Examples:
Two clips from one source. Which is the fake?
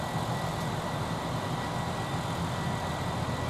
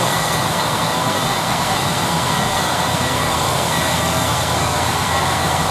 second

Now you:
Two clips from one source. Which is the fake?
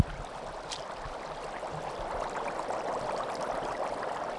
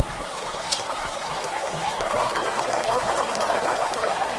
second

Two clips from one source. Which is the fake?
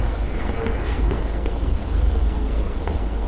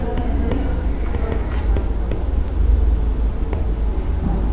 first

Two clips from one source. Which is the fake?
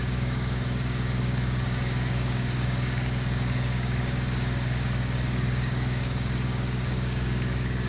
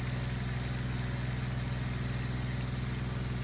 first